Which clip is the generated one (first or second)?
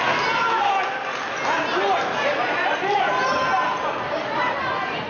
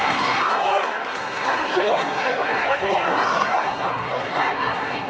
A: second